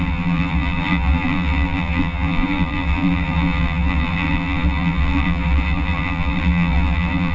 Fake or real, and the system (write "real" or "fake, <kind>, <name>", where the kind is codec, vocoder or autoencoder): fake, vocoder, BigVGAN v2